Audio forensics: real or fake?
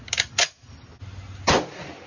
real